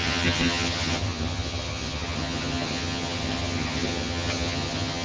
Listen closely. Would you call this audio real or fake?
fake